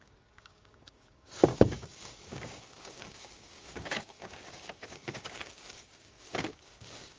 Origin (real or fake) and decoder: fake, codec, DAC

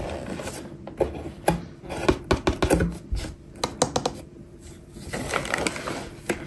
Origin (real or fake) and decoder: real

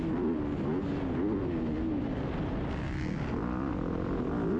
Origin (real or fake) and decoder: real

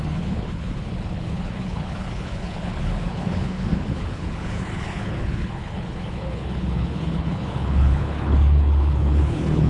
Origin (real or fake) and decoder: fake, codec, HILCodec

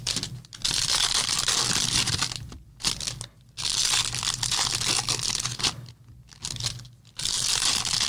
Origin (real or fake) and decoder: real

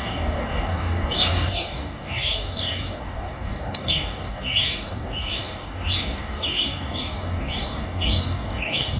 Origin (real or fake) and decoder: fake, codec, DAC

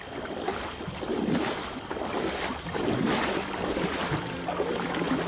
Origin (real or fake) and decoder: real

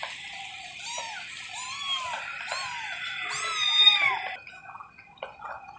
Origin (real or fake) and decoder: real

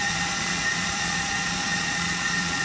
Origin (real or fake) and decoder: fake, vocoder, Vocos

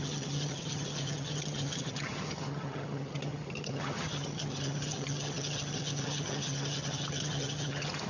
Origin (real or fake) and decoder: fake, vocoder, HiFi-GAN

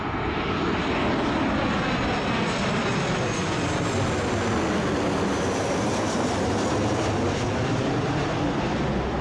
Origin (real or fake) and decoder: real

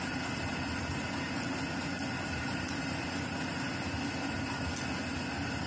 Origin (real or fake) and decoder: real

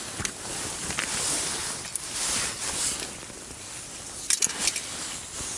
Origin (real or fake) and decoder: real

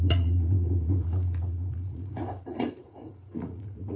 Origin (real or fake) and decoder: fake, vocoder, Vocos